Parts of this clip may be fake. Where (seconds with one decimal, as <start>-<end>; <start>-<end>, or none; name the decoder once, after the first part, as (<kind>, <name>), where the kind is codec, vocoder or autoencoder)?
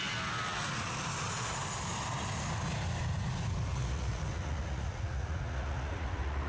3.7-6.5 (vocoder, Vocos)